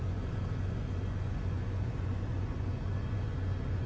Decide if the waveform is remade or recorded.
remade